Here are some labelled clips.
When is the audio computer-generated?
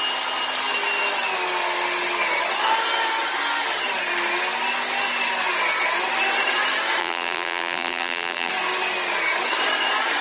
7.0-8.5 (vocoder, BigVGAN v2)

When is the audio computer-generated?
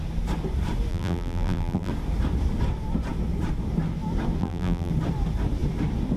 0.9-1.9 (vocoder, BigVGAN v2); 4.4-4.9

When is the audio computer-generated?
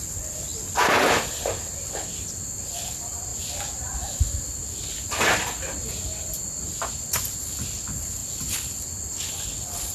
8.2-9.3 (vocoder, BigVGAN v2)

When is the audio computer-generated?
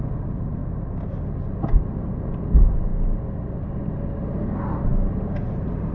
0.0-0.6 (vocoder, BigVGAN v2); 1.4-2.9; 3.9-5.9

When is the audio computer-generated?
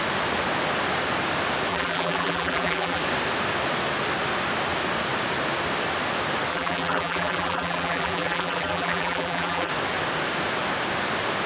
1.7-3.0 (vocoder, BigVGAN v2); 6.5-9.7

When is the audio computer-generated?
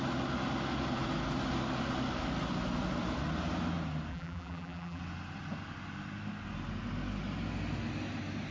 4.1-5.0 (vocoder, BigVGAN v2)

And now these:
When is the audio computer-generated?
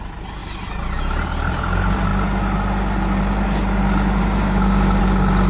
0.0-0.4 (vocoder, BigVGAN v2); 1.4-2.1; 5.0-5.5